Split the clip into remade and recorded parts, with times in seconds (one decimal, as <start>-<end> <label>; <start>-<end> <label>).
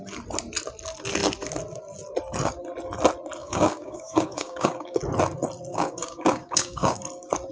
0.0-3.4 recorded; 3.4-5.0 remade; 5.0-5.7 recorded; 5.7-7.0 remade; 7.0-7.5 recorded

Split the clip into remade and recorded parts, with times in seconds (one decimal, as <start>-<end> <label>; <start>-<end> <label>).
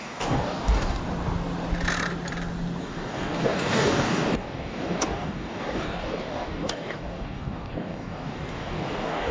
0.0-1.0 remade; 1.0-2.8 recorded; 2.8-9.3 remade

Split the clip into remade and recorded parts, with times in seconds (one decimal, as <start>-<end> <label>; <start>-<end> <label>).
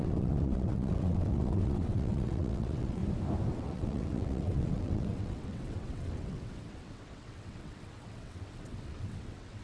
0.0-3.0 remade; 3.0-3.5 recorded; 3.5-9.6 remade